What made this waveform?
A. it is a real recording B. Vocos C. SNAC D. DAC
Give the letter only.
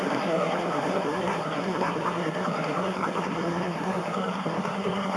C